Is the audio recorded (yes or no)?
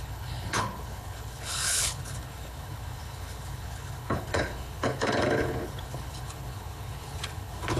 no